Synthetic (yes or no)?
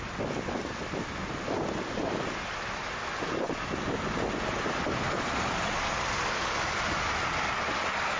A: no